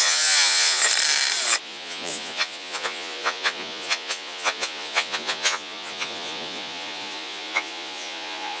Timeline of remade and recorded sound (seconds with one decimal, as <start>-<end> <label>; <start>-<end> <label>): 0.0-0.8 remade; 0.8-1.6 recorded; 1.6-8.6 remade